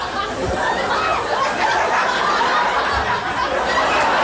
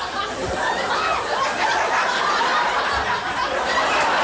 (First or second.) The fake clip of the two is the second